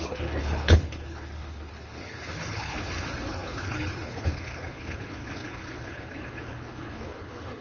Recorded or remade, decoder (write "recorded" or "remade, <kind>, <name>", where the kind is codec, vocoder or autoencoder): remade, codec, HILCodec